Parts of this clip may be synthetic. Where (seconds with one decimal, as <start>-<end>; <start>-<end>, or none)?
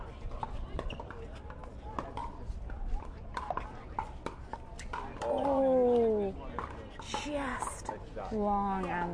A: none